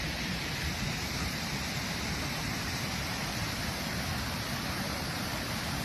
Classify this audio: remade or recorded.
remade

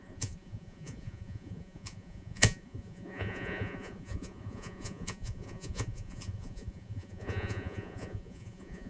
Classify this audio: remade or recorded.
remade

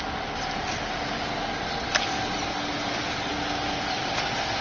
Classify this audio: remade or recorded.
recorded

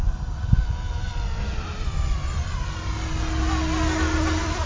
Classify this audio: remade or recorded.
recorded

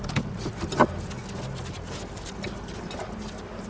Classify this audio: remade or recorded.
recorded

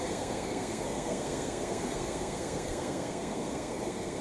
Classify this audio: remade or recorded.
remade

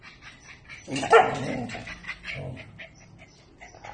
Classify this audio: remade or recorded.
recorded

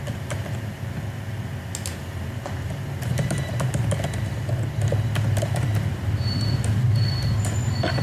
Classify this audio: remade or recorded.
recorded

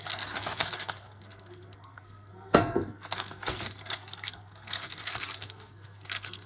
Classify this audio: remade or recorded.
remade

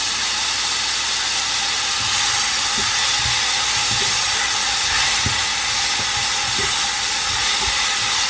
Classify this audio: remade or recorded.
recorded